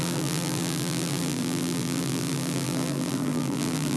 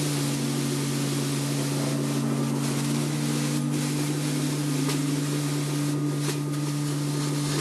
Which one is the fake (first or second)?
first